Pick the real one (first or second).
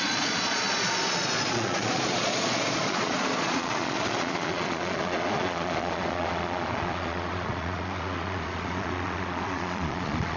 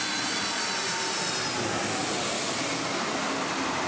second